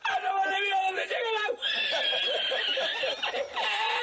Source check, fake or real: fake